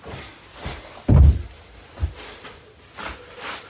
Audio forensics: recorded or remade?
recorded